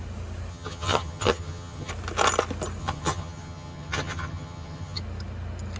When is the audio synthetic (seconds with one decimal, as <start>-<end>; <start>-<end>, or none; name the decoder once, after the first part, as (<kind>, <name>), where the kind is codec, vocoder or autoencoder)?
0.5-1.9 (vocoder, HiFi-GAN); 2.8-5.0